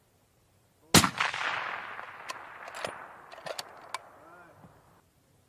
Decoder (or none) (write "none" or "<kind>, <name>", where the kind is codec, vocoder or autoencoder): none